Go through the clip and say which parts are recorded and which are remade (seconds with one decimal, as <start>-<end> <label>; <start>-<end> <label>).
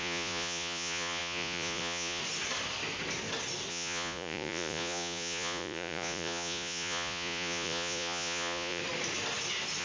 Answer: 0.0-2.2 remade; 2.2-3.7 recorded; 3.7-8.8 remade; 8.8-9.8 recorded